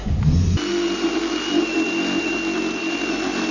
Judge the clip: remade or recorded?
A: recorded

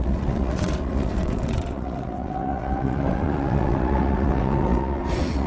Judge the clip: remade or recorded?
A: remade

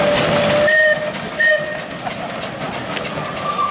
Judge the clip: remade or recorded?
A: recorded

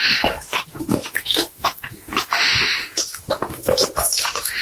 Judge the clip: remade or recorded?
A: remade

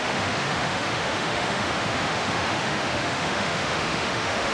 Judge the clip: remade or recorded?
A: remade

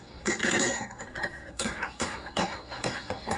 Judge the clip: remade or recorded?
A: remade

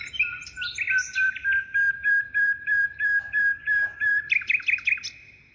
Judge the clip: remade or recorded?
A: recorded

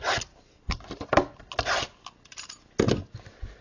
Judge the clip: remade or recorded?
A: recorded